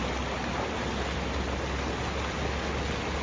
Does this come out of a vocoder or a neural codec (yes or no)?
no